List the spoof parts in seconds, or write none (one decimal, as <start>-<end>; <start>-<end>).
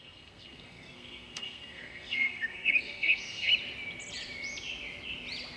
0.0-3.5